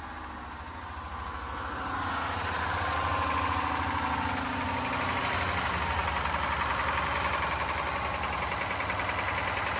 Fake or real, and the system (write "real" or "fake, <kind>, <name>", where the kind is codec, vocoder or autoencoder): real